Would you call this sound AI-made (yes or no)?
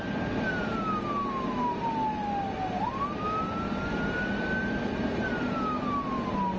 no